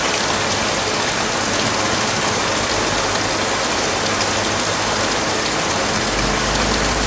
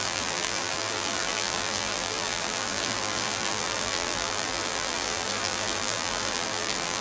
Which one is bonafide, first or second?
first